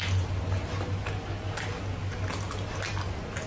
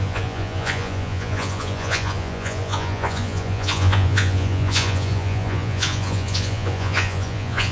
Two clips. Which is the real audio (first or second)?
first